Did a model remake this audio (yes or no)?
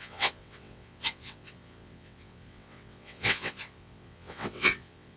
yes